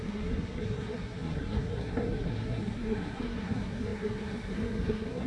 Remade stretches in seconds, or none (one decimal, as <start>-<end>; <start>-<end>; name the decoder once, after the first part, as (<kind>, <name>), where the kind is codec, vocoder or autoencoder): 0.0-5.3 (codec, SNAC)